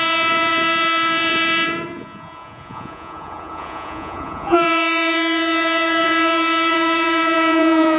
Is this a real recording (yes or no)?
no